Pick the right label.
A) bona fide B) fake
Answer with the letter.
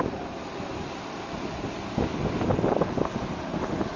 A